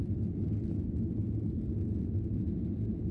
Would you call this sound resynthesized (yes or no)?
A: no